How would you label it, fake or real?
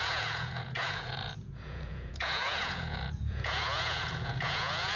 fake